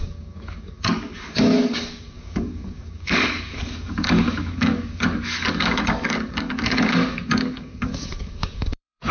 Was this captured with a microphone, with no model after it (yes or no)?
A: no